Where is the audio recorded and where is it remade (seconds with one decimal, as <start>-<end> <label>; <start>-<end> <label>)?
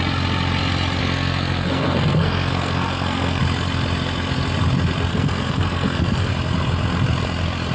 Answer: 0.0-1.0 recorded; 1.0-3.4 remade; 3.4-5.1 recorded; 5.1-6.3 remade; 6.3-7.7 recorded